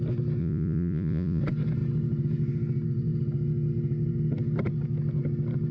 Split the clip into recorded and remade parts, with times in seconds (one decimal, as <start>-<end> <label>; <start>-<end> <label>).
0.0-0.4 recorded; 0.4-1.4 remade; 1.4-5.7 recorded